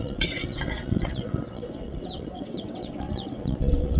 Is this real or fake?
fake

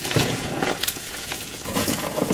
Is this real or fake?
fake